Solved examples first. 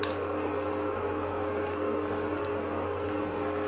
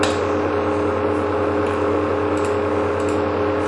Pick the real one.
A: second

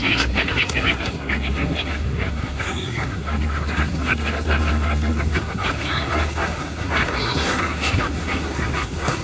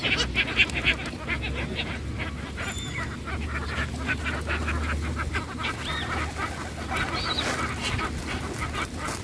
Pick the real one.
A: second